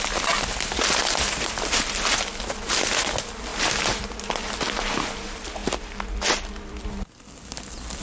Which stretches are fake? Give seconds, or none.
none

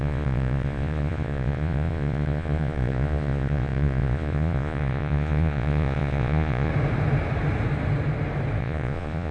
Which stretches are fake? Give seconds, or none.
0.0-6.7 (vocoder, Vocos); 8.6-9.3

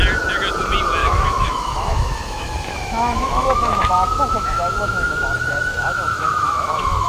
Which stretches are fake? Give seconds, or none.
1.0-5.3 (autoencoder, DAC-VAE); 5.7-7.1

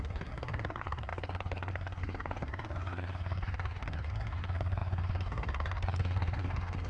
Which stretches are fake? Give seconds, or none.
0.0-6.9 (codec, SNAC)

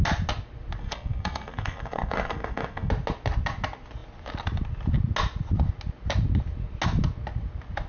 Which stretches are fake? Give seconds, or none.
0.8-2.9 (codec, SNAC)

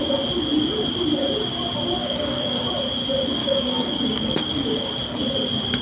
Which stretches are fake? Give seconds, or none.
2.0-2.6 (codec, DAC); 3.4-4.9